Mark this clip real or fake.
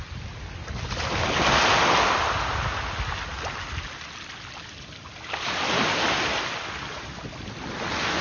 real